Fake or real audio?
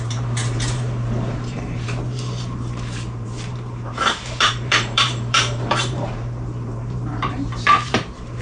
fake